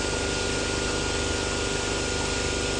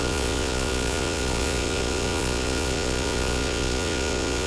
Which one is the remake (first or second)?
second